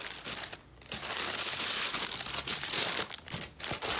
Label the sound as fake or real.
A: real